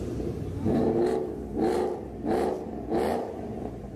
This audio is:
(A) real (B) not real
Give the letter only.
A